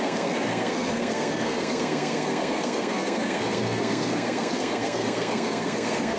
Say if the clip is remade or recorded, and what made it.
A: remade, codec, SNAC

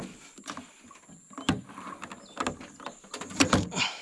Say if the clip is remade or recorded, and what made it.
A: recorded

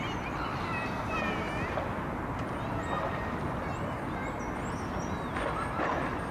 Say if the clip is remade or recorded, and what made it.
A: recorded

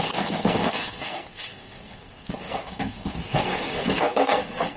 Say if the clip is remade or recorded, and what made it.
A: remade, codec, SNAC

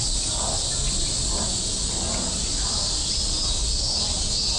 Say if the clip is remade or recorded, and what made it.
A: recorded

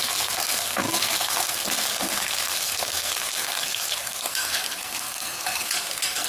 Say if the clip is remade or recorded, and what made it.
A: remade, codec, SNAC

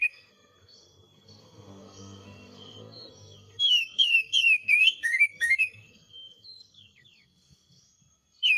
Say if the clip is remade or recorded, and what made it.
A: remade, codec, SNAC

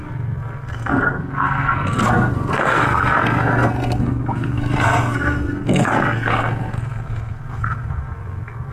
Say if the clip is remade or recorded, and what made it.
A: remade, codec, SNAC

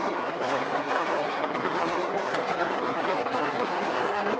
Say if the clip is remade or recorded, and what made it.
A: remade, codec, SNAC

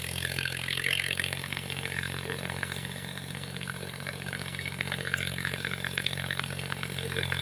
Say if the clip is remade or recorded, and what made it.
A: remade, codec, SNAC